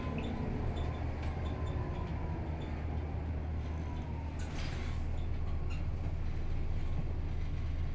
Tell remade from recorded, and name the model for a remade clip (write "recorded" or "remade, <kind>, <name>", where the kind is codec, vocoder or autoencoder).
recorded